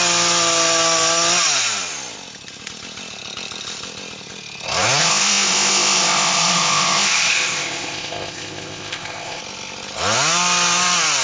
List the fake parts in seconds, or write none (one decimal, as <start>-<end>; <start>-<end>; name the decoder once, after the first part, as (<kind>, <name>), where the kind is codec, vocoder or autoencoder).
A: 5.0-9.4 (codec, ZipCodec)